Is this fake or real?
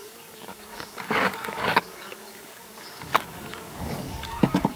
fake